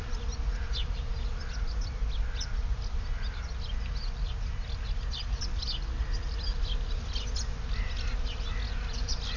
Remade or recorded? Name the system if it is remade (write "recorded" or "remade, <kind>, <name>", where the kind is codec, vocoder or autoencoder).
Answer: recorded